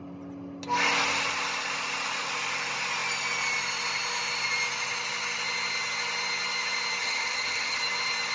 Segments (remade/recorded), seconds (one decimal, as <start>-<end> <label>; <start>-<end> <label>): 0.0-7.0 recorded; 7.0-7.8 remade; 7.8-8.3 recorded